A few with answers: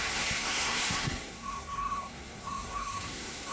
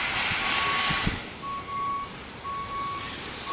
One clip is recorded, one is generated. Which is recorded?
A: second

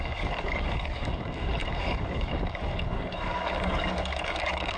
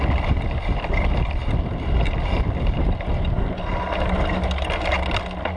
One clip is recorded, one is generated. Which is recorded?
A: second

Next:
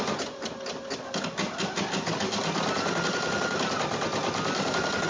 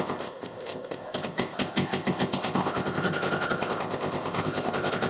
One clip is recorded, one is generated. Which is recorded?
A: first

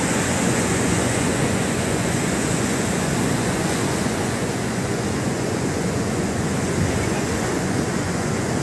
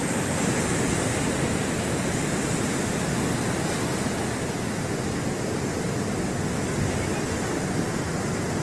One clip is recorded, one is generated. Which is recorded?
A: second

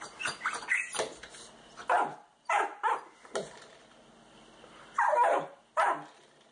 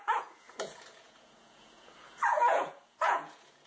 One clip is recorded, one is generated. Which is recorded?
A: first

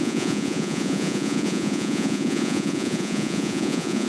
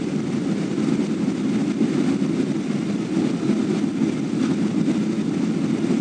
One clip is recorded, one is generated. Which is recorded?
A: second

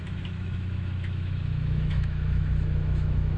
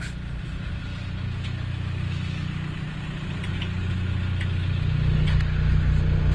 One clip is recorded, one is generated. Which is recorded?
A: second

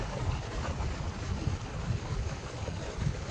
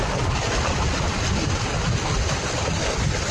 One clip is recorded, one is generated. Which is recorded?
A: second